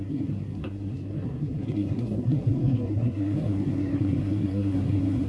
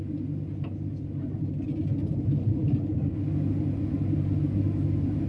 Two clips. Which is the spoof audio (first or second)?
first